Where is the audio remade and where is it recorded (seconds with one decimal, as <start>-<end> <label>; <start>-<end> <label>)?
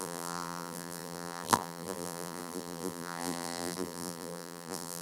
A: 0.0-5.0 remade